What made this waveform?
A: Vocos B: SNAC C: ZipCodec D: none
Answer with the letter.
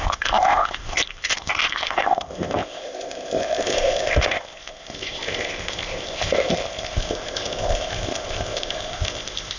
C